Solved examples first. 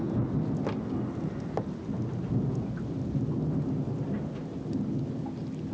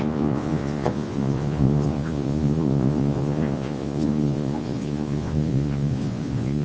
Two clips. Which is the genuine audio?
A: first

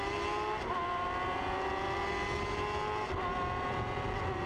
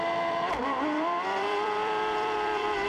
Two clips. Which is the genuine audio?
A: first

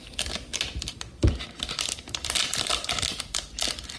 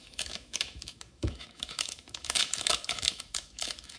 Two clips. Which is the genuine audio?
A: first